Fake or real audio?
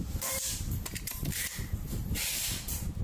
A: fake